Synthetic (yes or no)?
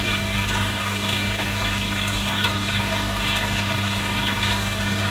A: yes